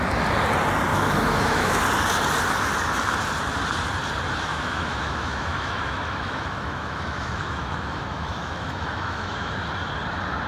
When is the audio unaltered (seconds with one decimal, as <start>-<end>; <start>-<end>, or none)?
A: 0.0-0.9; 1.8-4.5; 9.5-10.5